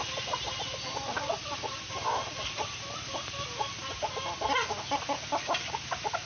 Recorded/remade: recorded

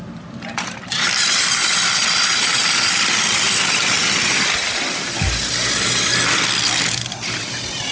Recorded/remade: recorded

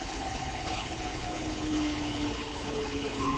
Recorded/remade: remade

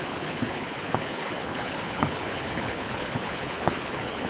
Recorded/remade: remade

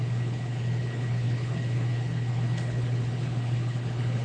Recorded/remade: remade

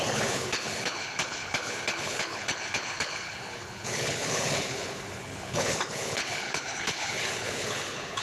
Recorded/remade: remade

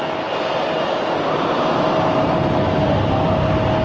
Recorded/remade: recorded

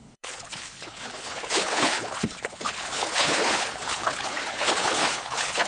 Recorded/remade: remade